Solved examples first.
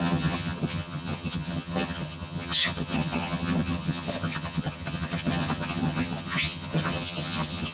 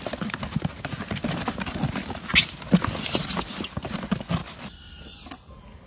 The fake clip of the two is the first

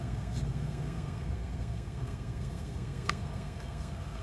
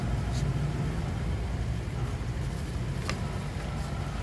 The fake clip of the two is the first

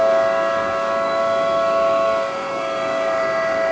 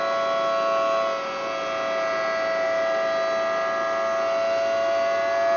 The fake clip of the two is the first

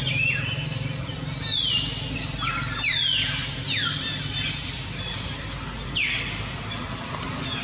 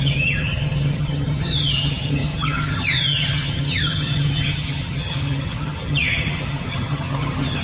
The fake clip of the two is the second